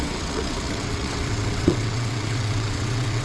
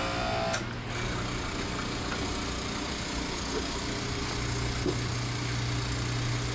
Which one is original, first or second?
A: second